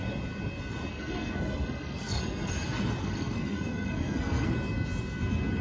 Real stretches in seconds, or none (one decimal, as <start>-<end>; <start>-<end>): 0.0-0.9; 2.5-3.0; 4.5-5.6